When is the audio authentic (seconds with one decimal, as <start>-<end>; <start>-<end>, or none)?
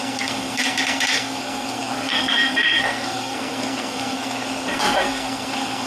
none